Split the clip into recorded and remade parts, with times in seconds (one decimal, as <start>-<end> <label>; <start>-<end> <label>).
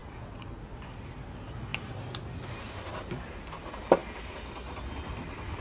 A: 0.0-1.7 recorded; 1.7-2.8 remade; 2.8-4.0 recorded; 4.0-4.8 remade; 4.8-5.6 recorded